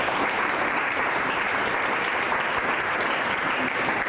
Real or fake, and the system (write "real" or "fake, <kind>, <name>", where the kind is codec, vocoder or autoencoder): fake, vocoder, BigVGAN v2